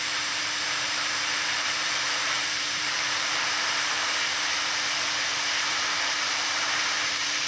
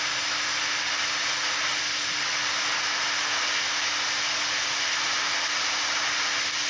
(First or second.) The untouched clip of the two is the second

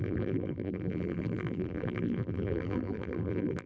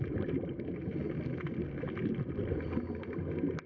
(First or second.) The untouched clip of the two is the second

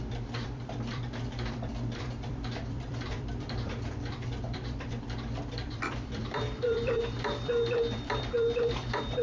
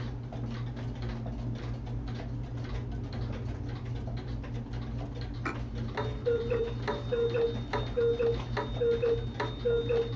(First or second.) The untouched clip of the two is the second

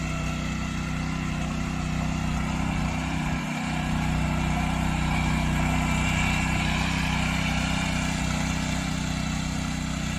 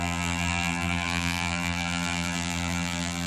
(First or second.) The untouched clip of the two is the first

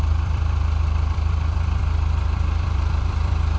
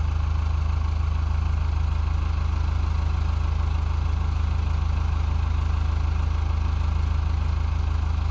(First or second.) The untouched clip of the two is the second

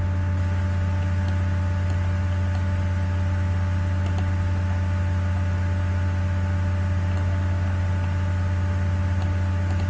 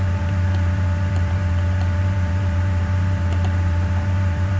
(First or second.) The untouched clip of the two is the first